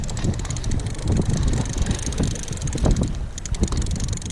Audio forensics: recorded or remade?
recorded